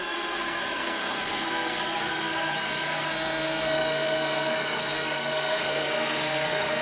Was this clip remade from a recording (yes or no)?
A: yes